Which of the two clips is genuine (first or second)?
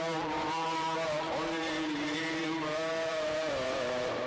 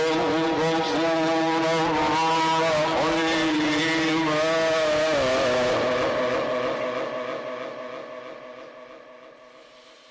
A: second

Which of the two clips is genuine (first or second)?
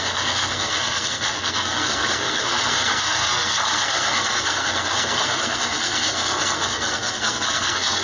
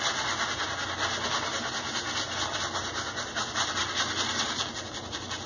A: second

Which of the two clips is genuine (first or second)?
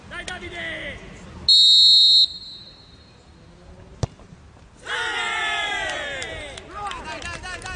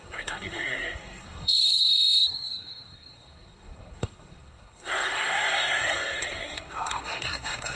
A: first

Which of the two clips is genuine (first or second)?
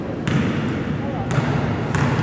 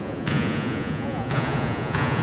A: first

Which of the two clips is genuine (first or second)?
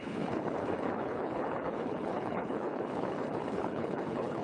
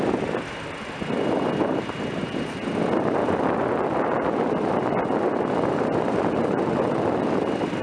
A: second